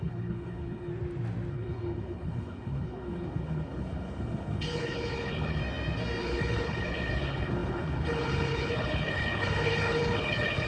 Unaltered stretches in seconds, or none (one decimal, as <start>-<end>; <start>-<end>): 0.9-1.5; 5.6-6.2